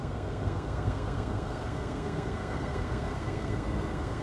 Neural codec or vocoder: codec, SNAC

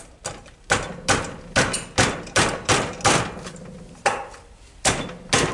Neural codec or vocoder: none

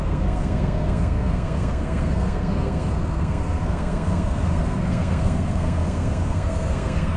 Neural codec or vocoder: codec, SNAC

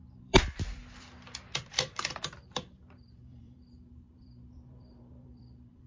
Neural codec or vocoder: vocoder, BigVGAN v2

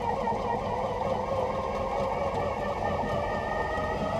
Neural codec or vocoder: none